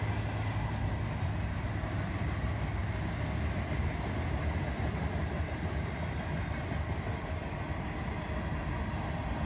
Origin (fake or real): real